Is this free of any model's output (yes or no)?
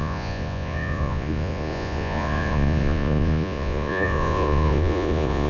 no